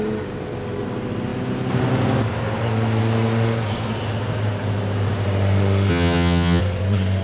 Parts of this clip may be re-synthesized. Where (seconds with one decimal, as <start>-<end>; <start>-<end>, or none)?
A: 5.9-6.6